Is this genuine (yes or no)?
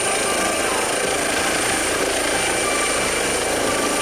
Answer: yes